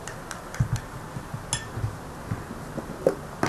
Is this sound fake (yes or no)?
no